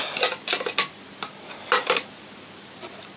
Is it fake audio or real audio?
real